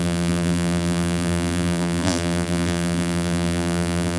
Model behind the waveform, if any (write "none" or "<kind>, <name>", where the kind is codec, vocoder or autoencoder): vocoder, BigVGAN v2